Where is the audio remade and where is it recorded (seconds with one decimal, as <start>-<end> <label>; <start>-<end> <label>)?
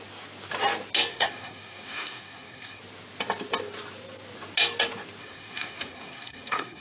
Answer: 0.0-1.1 recorded; 1.1-2.8 remade; 2.8-5.2 recorded; 5.2-6.8 remade